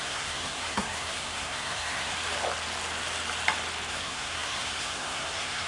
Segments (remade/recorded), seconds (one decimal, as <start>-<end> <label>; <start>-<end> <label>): 0.0-2.1 remade; 2.1-3.9 recorded; 3.9-5.7 remade